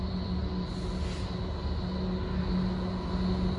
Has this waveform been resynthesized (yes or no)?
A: no